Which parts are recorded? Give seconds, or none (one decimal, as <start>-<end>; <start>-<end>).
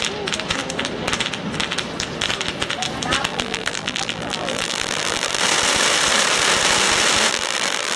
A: 0.0-3.3; 5.4-7.3